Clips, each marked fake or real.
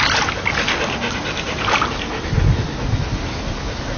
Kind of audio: real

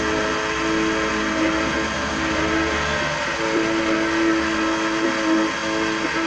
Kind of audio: real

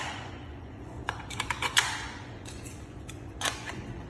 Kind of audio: fake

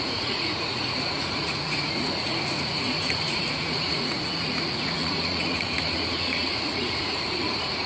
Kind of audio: fake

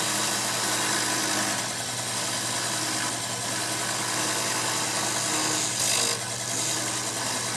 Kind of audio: real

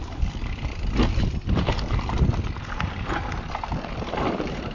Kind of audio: real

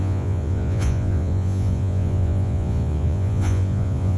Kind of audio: fake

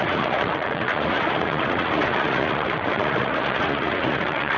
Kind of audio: fake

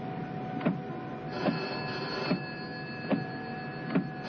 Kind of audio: real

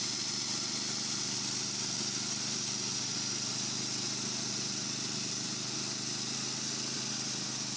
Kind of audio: real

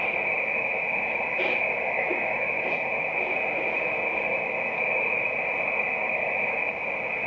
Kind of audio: real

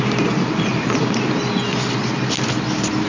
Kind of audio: real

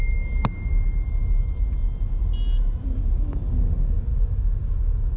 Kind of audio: real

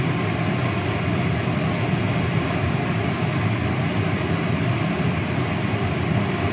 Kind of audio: real